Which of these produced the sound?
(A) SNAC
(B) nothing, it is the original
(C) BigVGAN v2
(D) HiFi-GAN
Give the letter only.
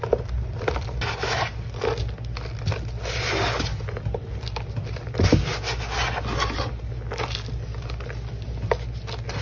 B